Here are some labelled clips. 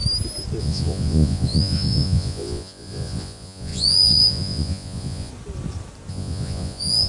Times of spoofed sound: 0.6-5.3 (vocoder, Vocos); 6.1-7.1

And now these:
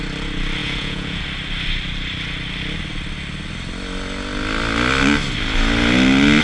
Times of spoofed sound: 0.6-1.2 (vocoder, Vocos)

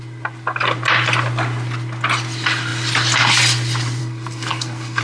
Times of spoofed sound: 4.0-5.0 (codec, SNAC)

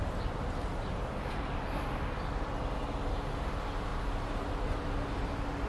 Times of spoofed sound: none

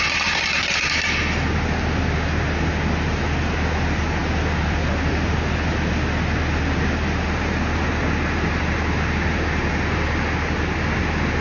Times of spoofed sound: none

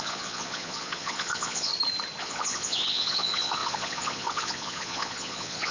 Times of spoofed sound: 0.0-1.7 (vocoder, Vocos); 2.2-5.7

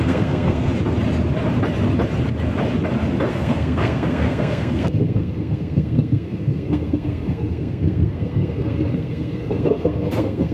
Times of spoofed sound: 0.0-0.7 (codec, SNAC); 3.3-10.5